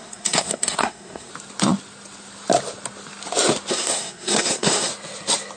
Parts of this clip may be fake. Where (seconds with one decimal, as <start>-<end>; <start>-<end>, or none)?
0.0-1.3; 3.7-4.9